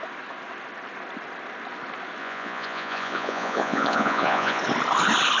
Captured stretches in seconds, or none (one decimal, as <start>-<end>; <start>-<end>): 0.0-2.2; 4.6-5.4